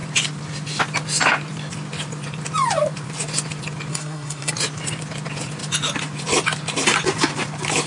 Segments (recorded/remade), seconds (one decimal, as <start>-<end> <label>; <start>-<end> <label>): 0.0-3.9 recorded; 3.9-4.5 remade; 4.5-7.9 recorded